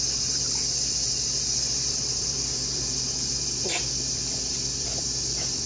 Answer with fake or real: fake